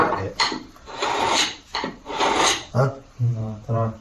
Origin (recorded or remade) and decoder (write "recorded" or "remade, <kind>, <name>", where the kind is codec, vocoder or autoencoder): remade, vocoder, BigVGAN v2